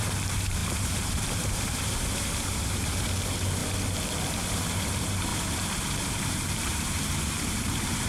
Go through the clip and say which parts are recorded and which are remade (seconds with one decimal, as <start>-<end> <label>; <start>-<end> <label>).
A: 0.0-3.6 remade; 3.6-4.3 recorded; 4.3-8.1 remade